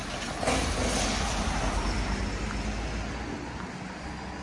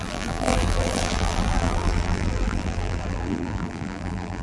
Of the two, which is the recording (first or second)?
first